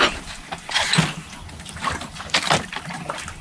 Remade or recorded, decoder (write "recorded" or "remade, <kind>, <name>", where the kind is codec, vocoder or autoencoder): recorded